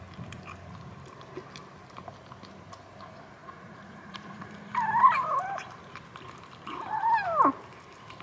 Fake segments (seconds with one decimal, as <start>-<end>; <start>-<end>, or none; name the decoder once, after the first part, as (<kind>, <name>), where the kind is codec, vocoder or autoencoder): 3.4-4.5 (vocoder, Vocos)